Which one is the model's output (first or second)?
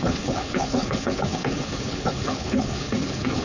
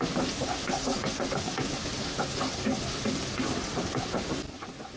first